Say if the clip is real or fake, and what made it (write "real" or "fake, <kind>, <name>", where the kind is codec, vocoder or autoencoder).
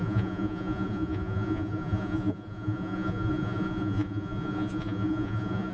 fake, vocoder, Vocos